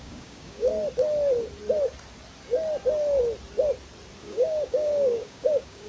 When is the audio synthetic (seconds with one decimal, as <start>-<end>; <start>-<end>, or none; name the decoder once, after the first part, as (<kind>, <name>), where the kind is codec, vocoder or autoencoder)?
0.0-0.7 (codec, DAC); 4.2-5.9